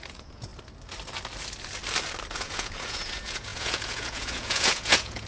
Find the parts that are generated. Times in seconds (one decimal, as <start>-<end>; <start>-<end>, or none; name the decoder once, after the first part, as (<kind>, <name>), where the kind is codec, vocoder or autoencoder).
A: 0.0-0.5 (vocoder, Vocos); 2.3-5.3